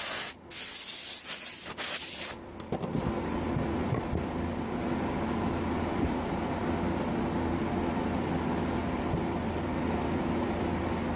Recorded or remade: recorded